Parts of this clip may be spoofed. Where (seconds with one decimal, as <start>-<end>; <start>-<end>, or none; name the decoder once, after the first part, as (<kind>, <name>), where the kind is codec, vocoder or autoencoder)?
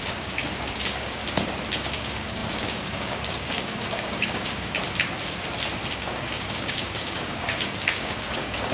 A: 0.0-1.2 (codec, DAC); 1.7-4.8; 5.9-8.7